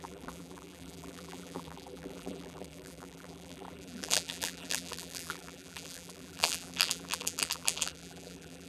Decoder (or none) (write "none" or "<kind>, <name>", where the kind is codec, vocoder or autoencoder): vocoder, BigVGAN v2